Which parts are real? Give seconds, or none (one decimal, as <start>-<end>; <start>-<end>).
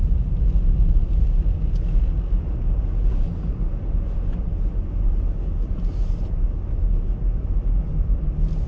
0.0-8.7